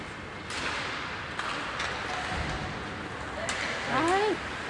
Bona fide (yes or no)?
yes